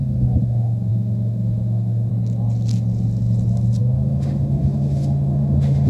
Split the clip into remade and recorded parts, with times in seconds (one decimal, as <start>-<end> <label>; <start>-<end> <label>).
0.0-2.1 remade; 2.1-3.8 recorded; 3.8-5.9 remade